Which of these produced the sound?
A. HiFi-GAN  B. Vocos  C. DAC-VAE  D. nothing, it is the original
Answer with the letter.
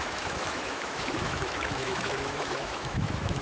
C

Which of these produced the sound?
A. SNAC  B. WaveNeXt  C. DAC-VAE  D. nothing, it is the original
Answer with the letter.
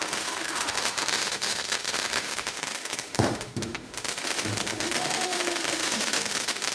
C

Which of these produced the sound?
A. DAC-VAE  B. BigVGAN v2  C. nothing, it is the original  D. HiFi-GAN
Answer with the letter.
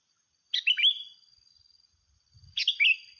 C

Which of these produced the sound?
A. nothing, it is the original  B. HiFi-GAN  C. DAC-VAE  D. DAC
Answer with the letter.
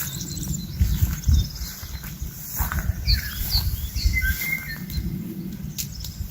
A